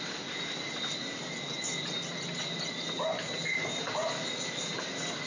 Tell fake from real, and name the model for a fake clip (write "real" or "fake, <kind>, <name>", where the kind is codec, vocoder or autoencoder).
real